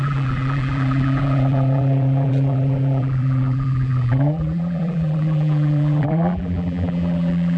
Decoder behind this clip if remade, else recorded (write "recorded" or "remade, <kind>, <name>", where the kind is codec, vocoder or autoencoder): remade, vocoder, BigVGAN v2